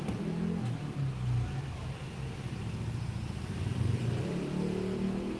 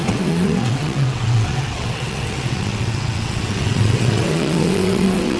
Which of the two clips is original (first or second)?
first